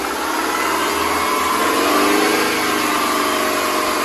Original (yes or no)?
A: yes